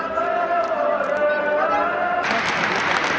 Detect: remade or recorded recorded